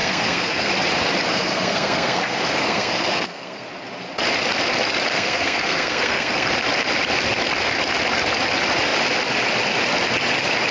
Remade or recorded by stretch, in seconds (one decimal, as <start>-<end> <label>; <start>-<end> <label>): 0.0-0.7 remade; 0.7-1.3 recorded; 1.3-3.7 remade; 3.7-5.1 recorded; 5.1-6.5 remade; 6.5-10.7 recorded